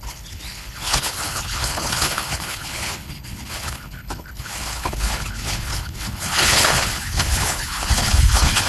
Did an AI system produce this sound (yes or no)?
yes